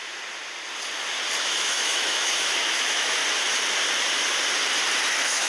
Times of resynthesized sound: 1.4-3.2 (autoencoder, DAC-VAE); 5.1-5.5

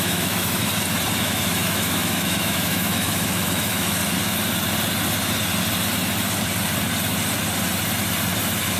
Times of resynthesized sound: 0.0-0.7 (autoencoder, DAC-VAE); 1.2-4.0

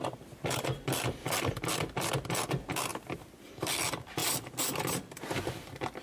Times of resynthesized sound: none